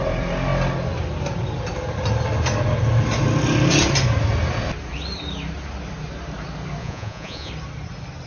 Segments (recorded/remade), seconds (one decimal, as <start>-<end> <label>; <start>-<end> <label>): 0.0-6.8 recorded; 6.8-7.5 remade; 7.5-8.3 recorded